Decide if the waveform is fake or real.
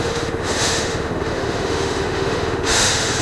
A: fake